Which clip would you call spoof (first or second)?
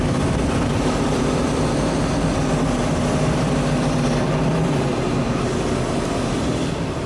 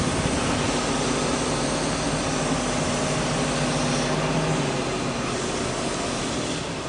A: first